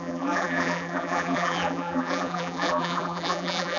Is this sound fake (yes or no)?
yes